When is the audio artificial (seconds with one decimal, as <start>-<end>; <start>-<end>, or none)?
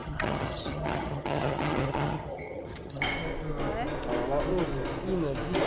0.0-3.0